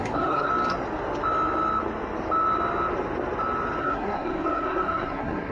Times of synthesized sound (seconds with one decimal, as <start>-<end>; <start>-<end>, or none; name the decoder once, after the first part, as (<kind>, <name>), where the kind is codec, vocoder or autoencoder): 0.0-0.5 (codec, SNAC); 3.8-5.5